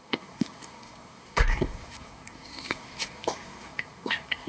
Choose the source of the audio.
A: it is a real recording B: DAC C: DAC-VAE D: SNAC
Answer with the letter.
D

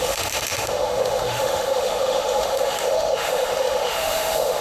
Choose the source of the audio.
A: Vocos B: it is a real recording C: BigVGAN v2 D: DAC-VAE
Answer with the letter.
D